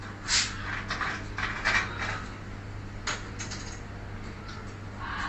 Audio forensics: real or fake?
real